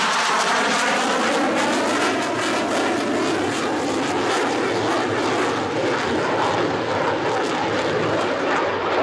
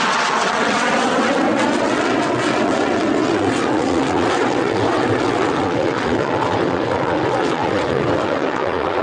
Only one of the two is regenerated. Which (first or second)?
second